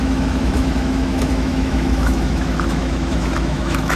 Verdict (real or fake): fake